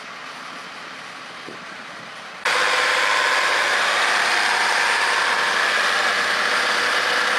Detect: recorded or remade recorded